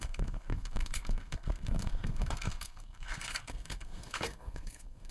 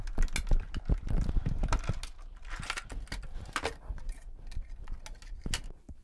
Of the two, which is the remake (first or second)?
first